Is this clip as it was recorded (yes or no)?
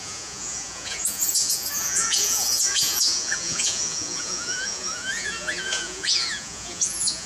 no